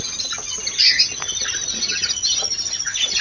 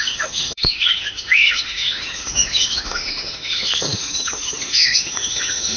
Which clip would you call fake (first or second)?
second